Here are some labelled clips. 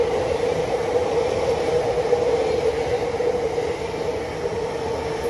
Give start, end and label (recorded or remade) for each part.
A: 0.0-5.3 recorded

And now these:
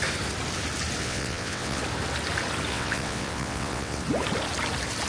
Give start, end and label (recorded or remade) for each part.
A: 0.0-1.0 recorded; 1.0-1.8 remade; 1.8-2.7 recorded; 2.7-4.0 remade; 4.0-5.1 recorded

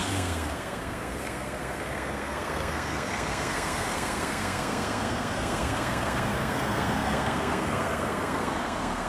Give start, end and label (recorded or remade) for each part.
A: 0.0-9.1 remade